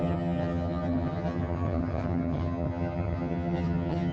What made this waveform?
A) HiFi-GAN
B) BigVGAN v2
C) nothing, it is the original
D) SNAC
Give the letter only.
A